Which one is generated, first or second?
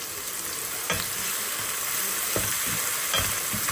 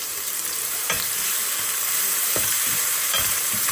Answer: second